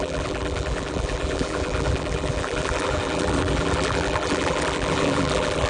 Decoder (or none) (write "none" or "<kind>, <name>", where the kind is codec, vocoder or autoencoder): vocoder, BigVGAN v2